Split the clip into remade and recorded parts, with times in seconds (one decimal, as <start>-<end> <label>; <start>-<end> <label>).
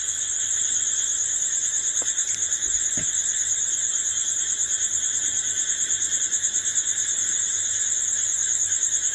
0.0-9.1 recorded